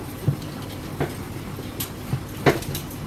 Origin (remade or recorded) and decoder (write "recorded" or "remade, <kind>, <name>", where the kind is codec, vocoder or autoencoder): recorded